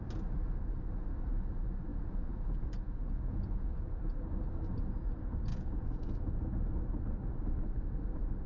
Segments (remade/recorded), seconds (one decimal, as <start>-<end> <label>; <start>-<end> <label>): 0.0-1.9 recorded; 1.9-4.1 remade; 4.1-5.5 recorded; 5.5-6.3 remade; 6.3-8.5 recorded